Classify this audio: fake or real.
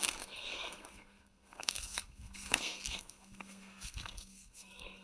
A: fake